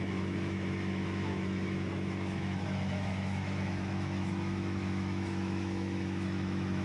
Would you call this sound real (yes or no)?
no